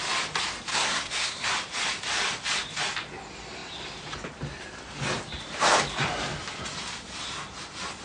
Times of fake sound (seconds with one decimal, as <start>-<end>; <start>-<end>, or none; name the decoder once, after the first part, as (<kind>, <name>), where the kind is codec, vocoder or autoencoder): 0.7-1.5 (codec, SNAC)